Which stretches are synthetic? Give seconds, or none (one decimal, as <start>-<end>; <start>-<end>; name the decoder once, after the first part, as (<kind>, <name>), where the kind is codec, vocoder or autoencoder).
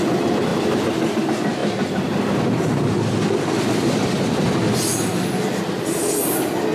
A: none